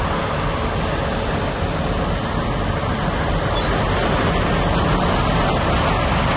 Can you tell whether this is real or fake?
real